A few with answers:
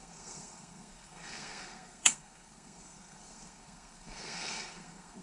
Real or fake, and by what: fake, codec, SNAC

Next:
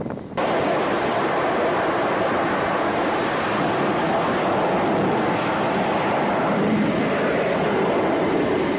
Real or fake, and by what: real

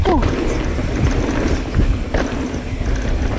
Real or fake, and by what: real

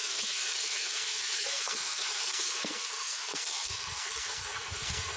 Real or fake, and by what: fake, codec, SNAC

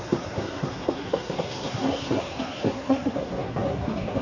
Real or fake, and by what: fake, codec, SNAC